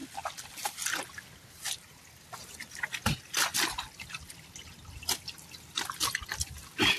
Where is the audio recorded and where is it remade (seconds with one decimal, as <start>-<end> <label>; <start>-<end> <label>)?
0.0-7.0 recorded